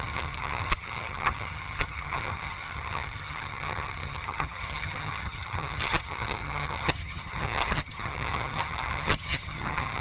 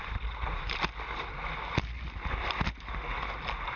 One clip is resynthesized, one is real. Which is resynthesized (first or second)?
first